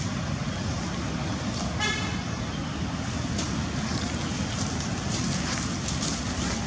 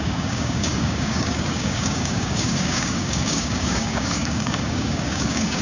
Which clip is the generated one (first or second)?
second